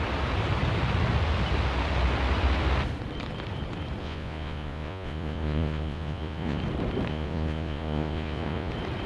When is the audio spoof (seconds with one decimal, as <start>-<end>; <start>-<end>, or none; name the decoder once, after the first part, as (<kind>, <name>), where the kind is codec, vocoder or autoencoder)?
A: 4.0-6.6 (vocoder, Vocos); 7.1-8.7